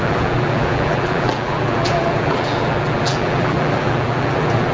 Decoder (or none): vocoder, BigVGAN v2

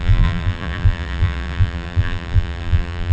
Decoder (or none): vocoder, BigVGAN v2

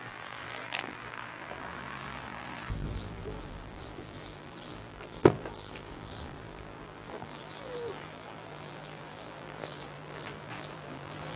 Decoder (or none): vocoder, BigVGAN v2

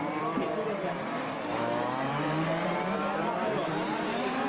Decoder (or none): vocoder, BigVGAN v2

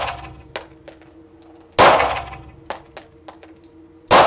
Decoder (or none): none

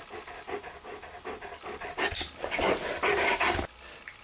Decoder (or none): none